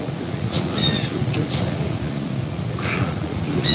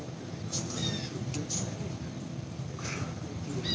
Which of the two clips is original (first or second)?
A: second